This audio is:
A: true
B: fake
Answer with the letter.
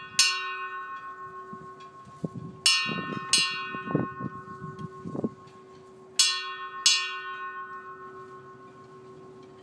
A